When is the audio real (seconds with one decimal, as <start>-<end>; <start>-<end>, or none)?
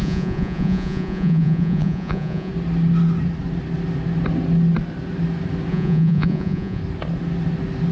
2.5-5.7; 6.8-7.9